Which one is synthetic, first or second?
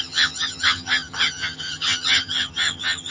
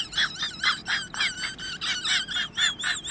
first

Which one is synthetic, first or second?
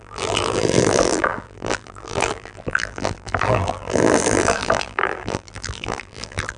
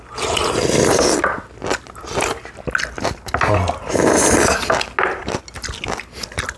first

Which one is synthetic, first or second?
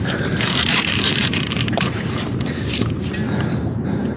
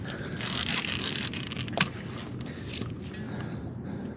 first